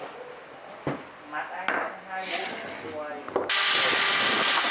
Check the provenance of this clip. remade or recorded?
recorded